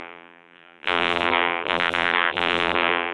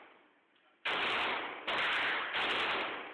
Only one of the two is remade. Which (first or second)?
first